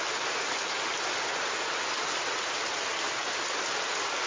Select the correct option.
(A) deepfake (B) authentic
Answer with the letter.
B